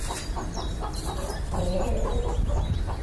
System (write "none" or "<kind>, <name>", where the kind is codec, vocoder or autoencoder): vocoder, BigVGAN v2